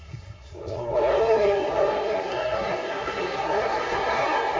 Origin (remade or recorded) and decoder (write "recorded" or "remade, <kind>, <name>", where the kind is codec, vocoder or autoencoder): remade, codec, SNAC